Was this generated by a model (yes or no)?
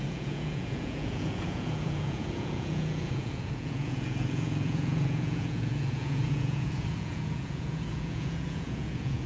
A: yes